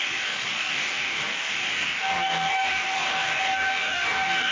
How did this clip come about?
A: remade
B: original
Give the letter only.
A